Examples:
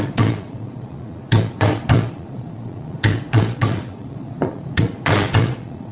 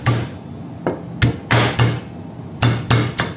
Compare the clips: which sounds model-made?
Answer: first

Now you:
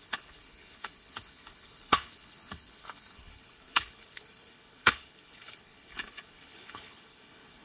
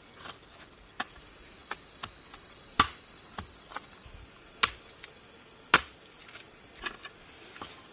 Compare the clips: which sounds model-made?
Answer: first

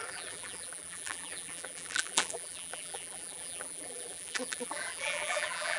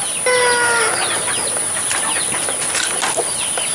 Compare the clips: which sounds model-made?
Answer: first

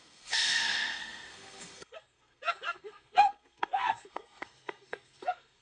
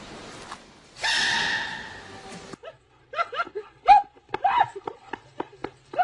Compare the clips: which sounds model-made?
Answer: first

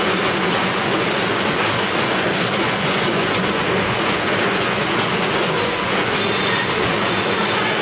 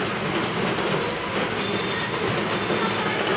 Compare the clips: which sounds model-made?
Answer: first